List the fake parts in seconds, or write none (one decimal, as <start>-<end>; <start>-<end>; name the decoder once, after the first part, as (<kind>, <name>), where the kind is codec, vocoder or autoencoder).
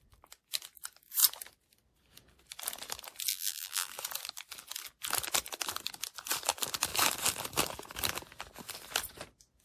3.3-3.9 (vocoder, BigVGAN v2)